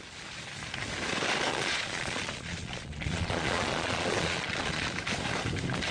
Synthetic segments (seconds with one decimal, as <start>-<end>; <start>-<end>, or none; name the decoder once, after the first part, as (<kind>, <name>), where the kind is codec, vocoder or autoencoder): 1.5-5.0 (vocoder, Vocos)